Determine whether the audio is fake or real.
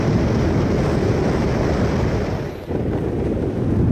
real